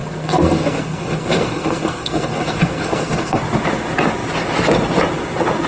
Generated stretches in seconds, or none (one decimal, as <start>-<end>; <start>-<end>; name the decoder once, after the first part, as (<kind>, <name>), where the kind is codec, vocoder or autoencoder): 0.0-3.4 (codec, SNAC)